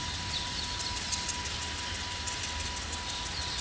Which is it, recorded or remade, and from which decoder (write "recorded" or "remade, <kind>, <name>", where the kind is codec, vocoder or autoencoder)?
recorded